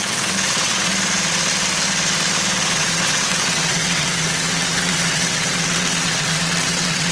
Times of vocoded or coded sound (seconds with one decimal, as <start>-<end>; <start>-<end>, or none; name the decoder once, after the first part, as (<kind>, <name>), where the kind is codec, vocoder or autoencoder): 0.0-0.9 (vocoder, WaveNeXt); 2.7-7.1

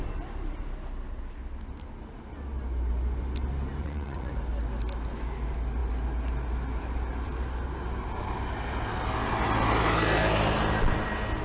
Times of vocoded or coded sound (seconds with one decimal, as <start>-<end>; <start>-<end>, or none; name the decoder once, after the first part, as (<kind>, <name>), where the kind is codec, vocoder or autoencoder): 3.8-4.3 (vocoder, WaveNeXt)

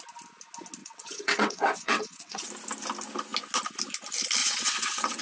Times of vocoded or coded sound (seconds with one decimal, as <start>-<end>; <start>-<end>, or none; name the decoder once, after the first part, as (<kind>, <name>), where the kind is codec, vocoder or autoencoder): 0.8-2.5 (vocoder, WaveNeXt); 4.4-5.2

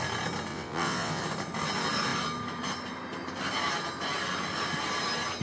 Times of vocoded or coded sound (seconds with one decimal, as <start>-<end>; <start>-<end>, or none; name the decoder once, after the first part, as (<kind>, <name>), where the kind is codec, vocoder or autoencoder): 0.5-1.2 (vocoder, WaveNeXt)